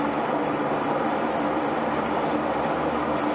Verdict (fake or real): fake